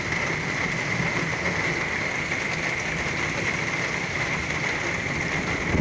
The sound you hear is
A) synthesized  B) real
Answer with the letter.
B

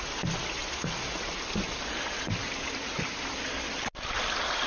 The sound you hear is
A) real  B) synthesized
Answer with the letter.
A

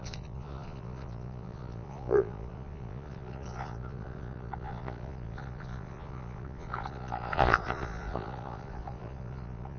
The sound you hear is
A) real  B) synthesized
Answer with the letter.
B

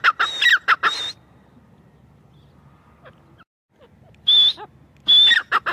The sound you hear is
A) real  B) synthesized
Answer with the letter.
A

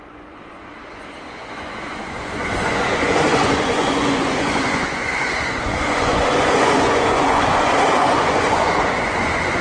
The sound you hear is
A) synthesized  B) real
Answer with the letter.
A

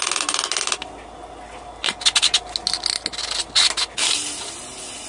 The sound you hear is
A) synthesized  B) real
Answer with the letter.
B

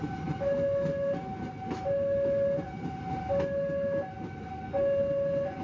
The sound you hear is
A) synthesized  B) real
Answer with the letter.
B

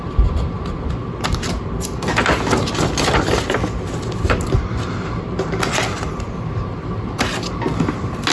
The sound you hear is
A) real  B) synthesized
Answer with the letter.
A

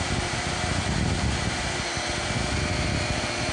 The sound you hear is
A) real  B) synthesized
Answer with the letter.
A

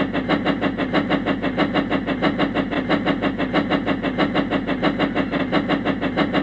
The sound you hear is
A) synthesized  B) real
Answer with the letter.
B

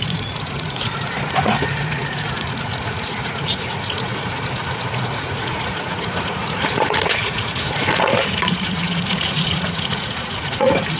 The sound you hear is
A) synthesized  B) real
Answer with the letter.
A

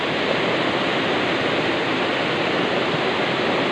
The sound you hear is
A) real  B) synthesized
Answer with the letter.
A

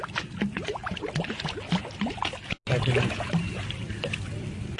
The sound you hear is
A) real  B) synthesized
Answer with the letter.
A